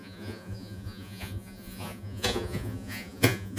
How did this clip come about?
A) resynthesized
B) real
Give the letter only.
A